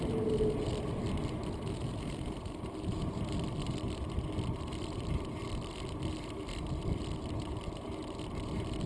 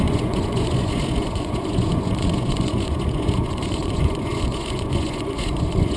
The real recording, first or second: first